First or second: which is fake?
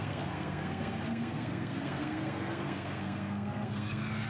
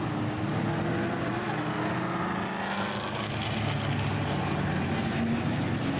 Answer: first